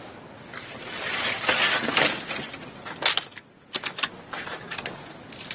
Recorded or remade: recorded